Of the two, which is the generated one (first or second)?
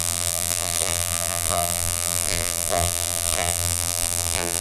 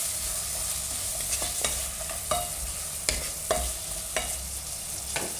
first